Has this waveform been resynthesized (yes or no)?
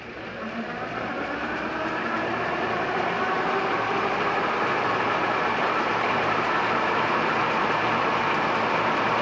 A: yes